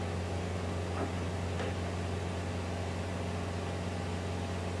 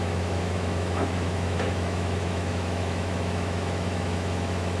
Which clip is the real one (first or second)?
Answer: first